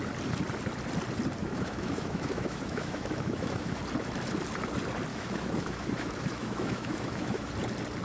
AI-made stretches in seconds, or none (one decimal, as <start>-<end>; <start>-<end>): 1.4-3.8; 5.1-7.5